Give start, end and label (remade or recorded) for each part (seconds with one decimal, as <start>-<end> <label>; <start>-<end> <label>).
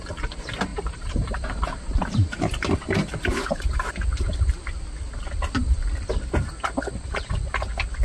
0.0-0.7 recorded; 0.7-3.9 remade; 3.9-8.0 recorded